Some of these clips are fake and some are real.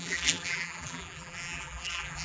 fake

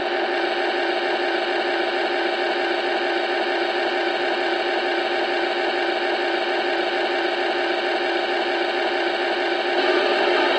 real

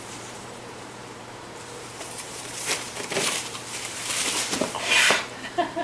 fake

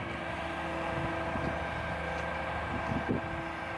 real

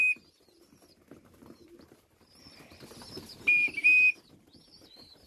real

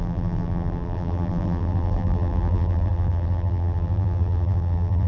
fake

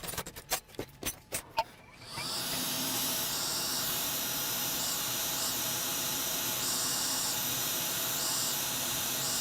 fake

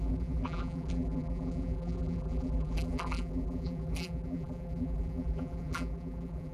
fake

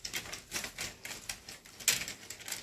real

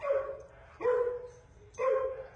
fake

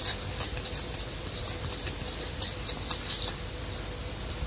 fake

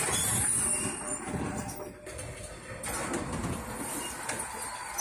real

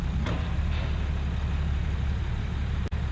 real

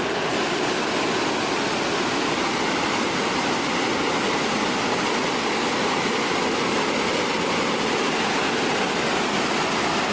fake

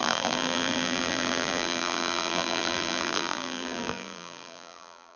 fake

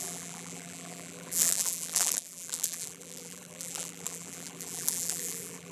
fake